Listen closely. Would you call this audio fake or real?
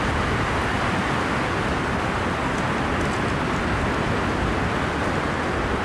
real